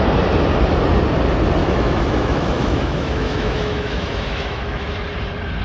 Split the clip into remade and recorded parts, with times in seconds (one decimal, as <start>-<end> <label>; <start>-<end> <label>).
0.0-1.6 recorded; 1.6-5.0 remade; 5.0-5.6 recorded